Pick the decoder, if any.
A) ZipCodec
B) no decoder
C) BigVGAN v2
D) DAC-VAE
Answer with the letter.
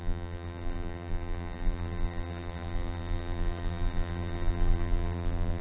C